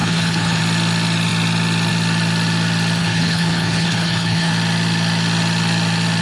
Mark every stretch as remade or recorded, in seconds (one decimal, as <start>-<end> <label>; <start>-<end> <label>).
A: 0.0-0.6 remade; 0.6-3.0 recorded; 3.0-4.5 remade; 4.5-6.2 recorded